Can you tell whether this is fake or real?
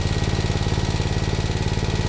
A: real